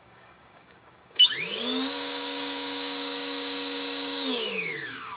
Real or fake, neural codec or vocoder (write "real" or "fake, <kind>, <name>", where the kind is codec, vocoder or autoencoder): fake, codec, DAC